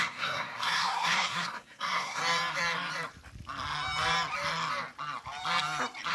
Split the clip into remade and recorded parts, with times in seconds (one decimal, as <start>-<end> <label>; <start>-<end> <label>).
0.0-2.2 remade; 2.2-6.1 recorded